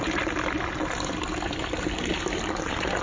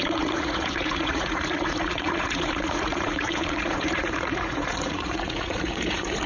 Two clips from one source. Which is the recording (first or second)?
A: first